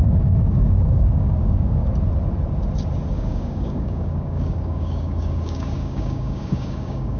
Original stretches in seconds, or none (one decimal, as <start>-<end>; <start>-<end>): 1.8-3.1